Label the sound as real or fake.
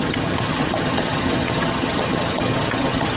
fake